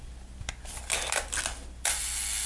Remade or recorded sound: recorded